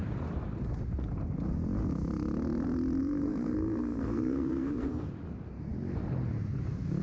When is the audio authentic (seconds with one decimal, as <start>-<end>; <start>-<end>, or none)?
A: 0.0-3.0; 5.1-7.0